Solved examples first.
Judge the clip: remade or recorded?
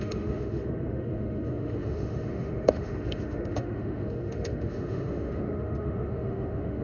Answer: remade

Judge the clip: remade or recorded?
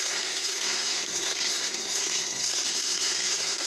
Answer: remade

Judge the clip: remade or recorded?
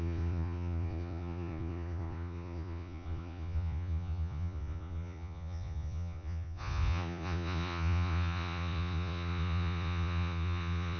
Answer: remade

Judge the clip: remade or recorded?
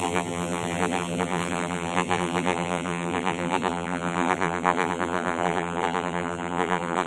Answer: remade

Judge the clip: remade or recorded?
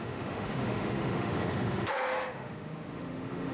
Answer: remade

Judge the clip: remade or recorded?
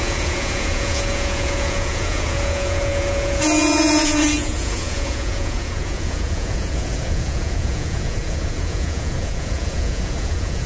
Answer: remade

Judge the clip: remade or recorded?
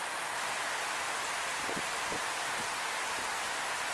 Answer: recorded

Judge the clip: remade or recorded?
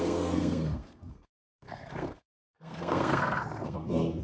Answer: remade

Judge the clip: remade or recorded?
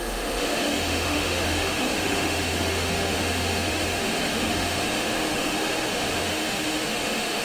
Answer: remade